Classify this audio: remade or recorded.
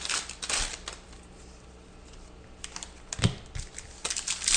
recorded